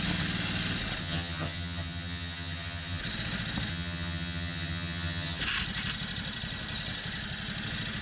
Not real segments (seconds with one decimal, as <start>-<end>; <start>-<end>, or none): 1.0-3.0; 3.7-5.4